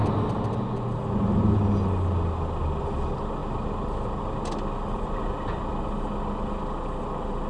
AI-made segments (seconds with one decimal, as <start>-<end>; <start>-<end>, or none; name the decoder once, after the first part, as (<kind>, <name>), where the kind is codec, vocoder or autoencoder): none